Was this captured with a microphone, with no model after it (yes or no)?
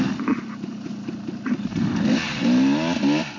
yes